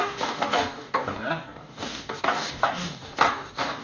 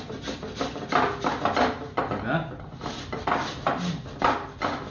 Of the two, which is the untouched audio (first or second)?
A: second